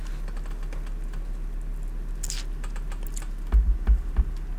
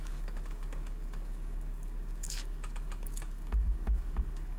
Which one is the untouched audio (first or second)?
first